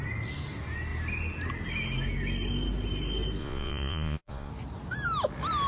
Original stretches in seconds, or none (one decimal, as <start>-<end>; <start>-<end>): 0.0-3.4; 4.5-5.7